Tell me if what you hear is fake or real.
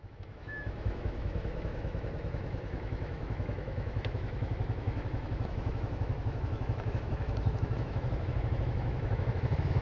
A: fake